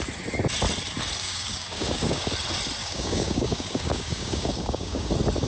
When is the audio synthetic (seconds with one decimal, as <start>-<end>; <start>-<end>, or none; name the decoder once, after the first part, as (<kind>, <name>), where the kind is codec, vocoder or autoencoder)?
1.2-2.3 (codec, DAC); 2.8-5.1